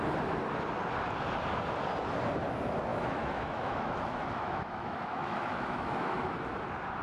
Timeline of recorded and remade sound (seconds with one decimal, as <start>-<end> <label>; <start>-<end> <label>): 0.0-2.9 recorded; 2.9-6.2 remade; 6.2-7.0 recorded